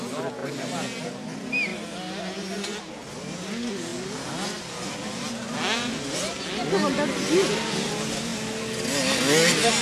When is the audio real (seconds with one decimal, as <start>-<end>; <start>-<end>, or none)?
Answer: 0.0-9.8